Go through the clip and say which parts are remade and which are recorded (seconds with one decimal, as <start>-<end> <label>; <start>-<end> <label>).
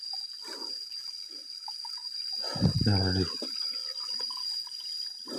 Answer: 0.0-5.4 recorded